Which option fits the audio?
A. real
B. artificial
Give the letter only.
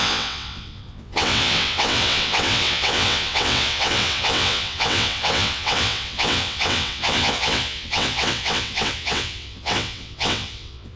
B